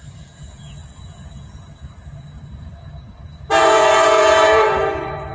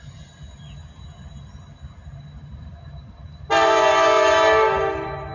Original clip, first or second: second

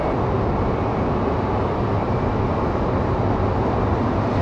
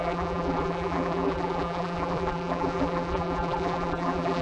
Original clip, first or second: first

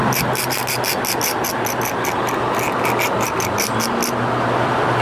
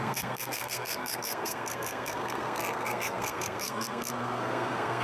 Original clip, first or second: first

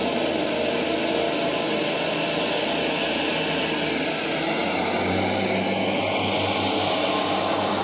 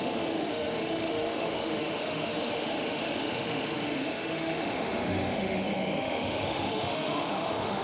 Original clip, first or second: first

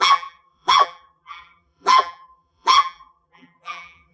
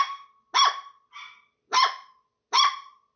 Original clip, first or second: second